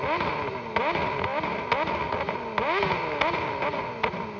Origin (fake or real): real